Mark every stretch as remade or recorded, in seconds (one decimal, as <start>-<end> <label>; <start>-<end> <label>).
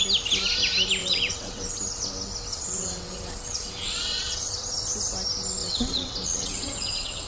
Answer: 0.0-1.0 recorded; 1.0-1.7 remade; 1.7-2.5 recorded; 2.5-4.5 remade; 4.5-5.6 recorded; 5.6-7.3 remade